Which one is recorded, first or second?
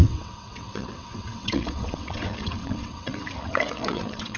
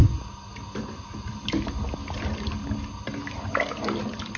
second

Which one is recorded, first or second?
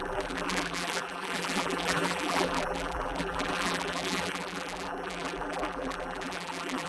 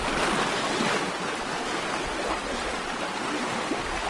second